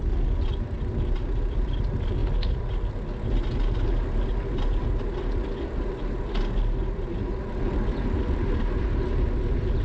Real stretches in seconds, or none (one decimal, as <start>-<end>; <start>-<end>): 0.0-9.8